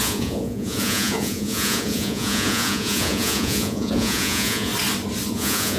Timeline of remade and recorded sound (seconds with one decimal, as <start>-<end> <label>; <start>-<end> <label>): 0.0-4.7 remade; 4.7-5.3 recorded; 5.3-5.8 remade